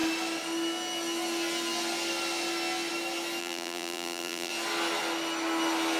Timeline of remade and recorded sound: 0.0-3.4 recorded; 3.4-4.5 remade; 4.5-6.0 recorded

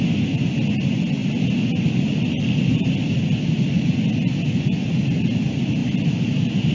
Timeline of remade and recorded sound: 0.0-6.7 recorded

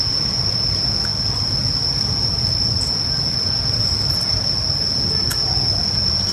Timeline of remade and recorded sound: 0.0-6.3 recorded